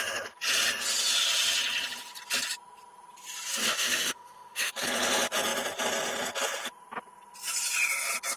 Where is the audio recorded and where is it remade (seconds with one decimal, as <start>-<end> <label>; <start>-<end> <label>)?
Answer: 0.0-3.6 recorded; 3.6-4.7 remade; 4.7-8.4 recorded